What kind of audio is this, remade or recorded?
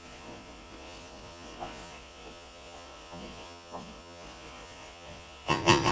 remade